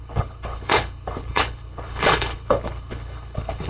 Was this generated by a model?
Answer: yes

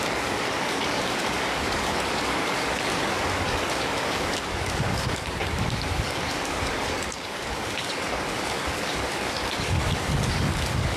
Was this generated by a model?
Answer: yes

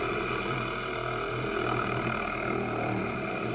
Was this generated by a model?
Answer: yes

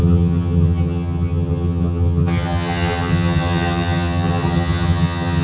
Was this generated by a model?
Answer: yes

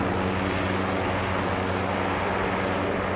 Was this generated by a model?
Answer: no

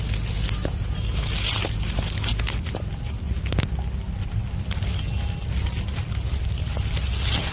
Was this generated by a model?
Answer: no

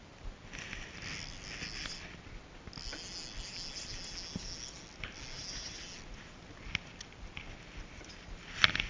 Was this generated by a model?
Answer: no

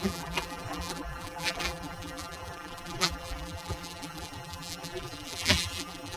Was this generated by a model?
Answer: yes